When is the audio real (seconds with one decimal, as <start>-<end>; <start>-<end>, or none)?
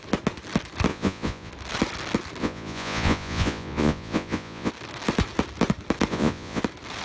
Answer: 0.0-0.9; 1.5-2.4; 4.7-6.1; 6.6-7.0